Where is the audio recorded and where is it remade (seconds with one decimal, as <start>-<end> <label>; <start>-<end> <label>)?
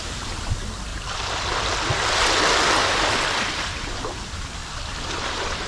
0.0-0.9 remade; 0.9-3.5 recorded; 3.5-4.6 remade; 4.6-5.1 recorded; 5.1-5.7 remade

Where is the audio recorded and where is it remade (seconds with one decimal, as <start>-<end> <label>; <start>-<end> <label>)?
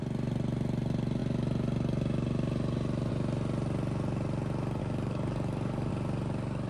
0.0-4.8 recorded; 4.8-5.9 remade; 5.9-6.7 recorded